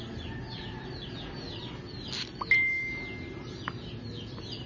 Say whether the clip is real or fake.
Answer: real